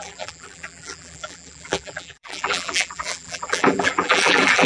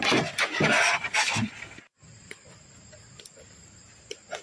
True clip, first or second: second